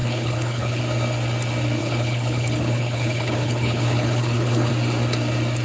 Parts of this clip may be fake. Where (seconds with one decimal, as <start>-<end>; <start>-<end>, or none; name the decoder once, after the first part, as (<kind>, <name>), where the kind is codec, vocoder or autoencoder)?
0.0-0.8 (codec, HILCodec); 1.8-4.7

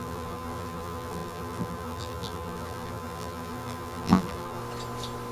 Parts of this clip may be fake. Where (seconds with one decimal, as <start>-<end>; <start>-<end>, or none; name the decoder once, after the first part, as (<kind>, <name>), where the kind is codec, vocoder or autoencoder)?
0.0-4.6 (vocoder, BigVGAN v2)

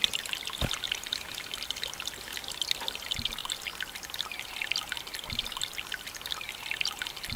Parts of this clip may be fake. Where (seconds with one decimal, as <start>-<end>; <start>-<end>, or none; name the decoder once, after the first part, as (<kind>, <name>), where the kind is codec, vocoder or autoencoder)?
none

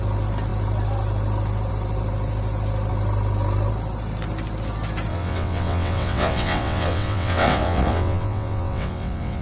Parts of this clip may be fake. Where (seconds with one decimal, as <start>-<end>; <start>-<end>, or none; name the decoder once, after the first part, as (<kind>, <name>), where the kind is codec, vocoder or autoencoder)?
5.1-9.4 (vocoder, WaveNeXt)

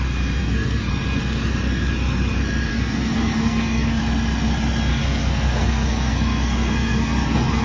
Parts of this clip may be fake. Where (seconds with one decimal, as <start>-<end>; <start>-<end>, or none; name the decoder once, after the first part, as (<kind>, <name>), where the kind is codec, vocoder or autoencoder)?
0.4-0.9 (codec, SNAC); 2.7-4.0; 4.9-7.6